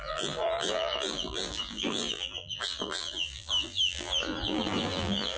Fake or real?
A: fake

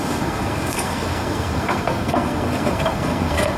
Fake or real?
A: fake